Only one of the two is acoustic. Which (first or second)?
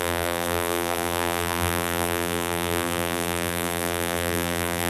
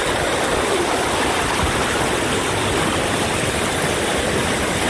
second